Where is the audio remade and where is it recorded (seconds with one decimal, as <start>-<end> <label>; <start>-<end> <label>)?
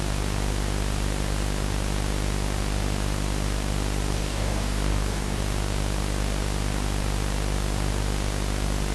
0.0-4.1 recorded; 4.1-5.4 remade; 5.4-8.9 recorded